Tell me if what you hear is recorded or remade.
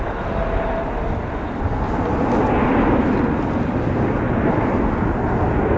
recorded